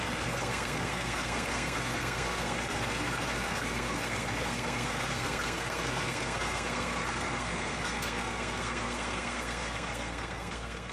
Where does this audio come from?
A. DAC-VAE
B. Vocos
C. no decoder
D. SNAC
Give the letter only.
D